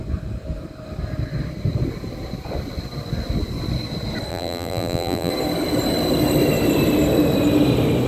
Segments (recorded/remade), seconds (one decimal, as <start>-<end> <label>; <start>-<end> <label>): 0.0-4.3 recorded; 4.3-5.3 remade; 5.3-8.1 recorded